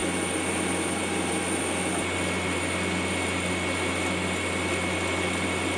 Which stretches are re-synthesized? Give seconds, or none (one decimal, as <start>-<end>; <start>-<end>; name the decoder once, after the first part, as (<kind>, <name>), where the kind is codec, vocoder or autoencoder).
none